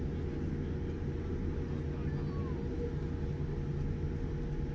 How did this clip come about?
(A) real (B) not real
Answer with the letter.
A